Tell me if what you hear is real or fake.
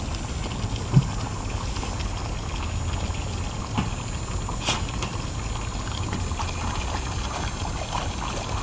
real